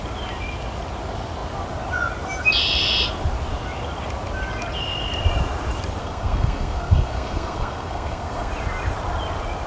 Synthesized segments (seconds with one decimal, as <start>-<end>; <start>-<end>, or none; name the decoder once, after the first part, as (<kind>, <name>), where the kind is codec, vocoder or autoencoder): 6.0-8.5 (codec, SNAC)